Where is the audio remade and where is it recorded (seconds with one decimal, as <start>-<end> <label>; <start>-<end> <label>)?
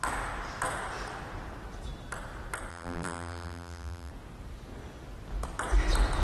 0.0-2.7 recorded; 2.7-4.1 remade; 4.1-6.2 recorded